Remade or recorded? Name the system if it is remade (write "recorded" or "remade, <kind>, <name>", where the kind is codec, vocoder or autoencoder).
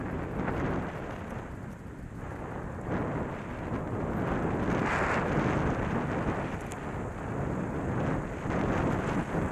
recorded